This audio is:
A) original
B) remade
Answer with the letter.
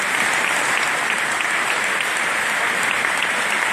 A